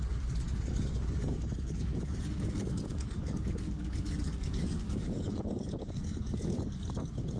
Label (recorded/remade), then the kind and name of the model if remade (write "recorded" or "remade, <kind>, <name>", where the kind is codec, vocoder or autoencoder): remade, codec, DAC